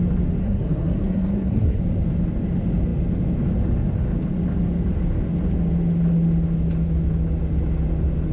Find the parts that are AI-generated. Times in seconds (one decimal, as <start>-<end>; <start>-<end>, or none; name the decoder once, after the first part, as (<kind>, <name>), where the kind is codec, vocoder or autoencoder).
0.4-1.8 (codec, SNAC)